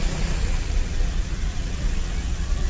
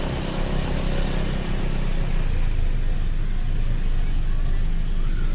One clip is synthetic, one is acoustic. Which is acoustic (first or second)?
second